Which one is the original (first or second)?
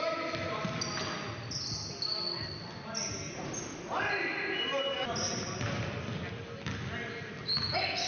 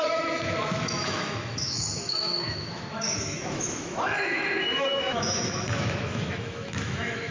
first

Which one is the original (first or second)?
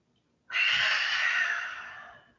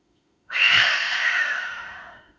first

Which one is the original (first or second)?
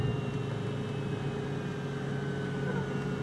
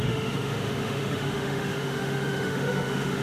first